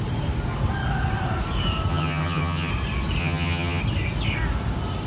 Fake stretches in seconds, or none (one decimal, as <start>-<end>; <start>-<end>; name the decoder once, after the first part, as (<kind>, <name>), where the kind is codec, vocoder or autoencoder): 1.9-2.7 (vocoder, HiFi-GAN); 3.2-3.8